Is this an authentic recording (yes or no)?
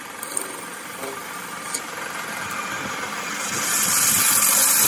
yes